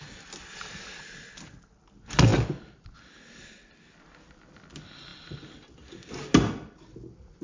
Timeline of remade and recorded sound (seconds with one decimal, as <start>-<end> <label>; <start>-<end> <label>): 0.0-7.4 recorded